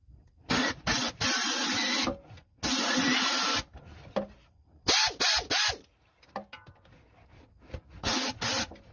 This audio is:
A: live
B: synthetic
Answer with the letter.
A